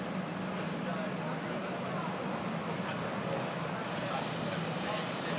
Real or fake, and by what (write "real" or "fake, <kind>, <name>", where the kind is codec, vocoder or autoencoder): real